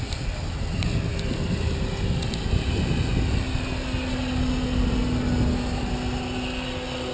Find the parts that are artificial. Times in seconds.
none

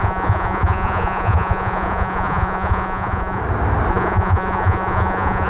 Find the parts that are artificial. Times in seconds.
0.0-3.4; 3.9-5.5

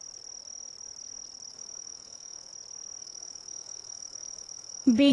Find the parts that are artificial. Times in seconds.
1.5-2.5; 3.0-5.1

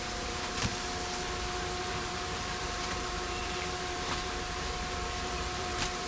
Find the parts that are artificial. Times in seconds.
0.0-0.7; 1.8-6.1